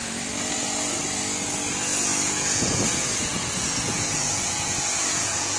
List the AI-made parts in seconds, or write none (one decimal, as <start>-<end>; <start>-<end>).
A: 1.9-5.6